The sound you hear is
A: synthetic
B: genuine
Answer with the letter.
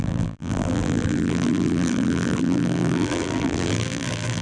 A